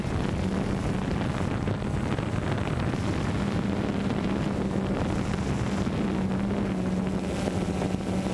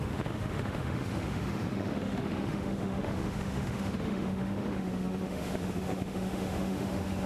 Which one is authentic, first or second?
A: first